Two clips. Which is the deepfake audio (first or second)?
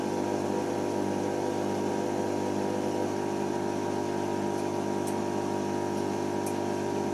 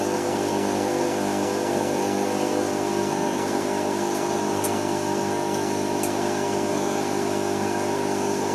second